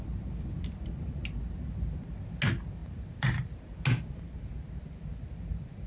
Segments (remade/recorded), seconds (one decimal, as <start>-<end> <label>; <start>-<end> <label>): 0.0-5.9 recorded